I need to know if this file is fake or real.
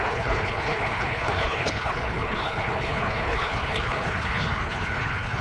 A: fake